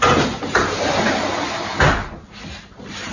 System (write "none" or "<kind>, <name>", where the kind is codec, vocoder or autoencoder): none